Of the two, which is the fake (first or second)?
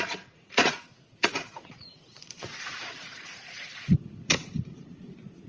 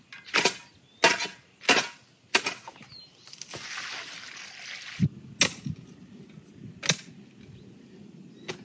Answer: first